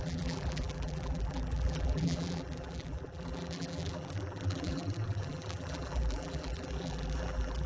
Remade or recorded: remade